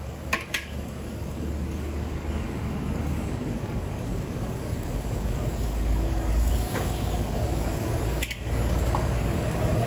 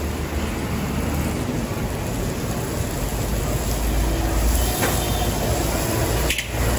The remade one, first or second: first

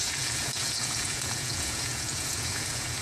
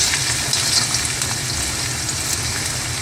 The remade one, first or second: first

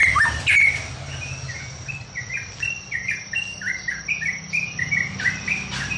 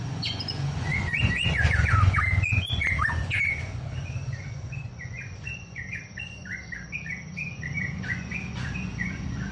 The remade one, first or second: second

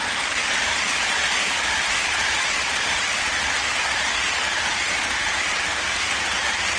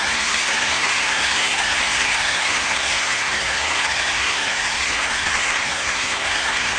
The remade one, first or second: second